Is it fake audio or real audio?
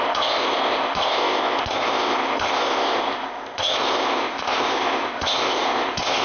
fake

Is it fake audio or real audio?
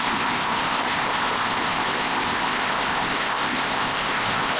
fake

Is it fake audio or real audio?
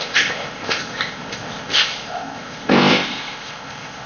fake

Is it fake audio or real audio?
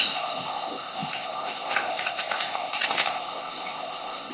fake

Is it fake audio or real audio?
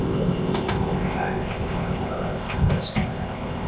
fake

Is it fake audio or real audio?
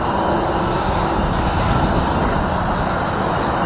real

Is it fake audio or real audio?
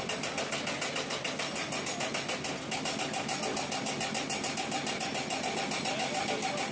real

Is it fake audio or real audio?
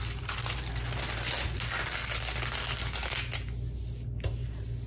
real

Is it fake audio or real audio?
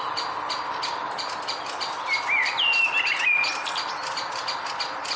real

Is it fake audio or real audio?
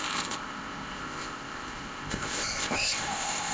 fake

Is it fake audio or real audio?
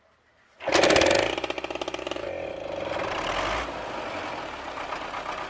real